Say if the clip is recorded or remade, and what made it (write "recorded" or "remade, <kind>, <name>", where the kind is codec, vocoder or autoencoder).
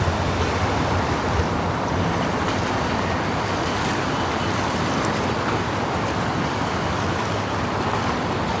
remade, vocoder, BigVGAN v2